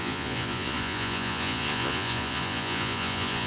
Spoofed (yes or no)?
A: yes